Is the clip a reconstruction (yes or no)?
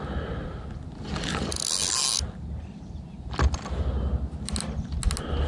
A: no